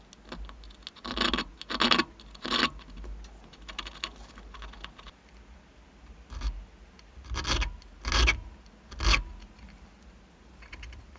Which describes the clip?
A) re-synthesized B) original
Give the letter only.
B